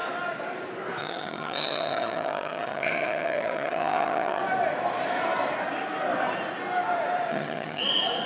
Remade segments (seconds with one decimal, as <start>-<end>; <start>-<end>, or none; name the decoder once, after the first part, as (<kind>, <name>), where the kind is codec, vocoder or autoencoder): 1.0-4.4 (vocoder, HiFi-GAN); 7.3-7.8